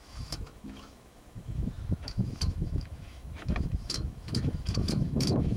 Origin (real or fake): fake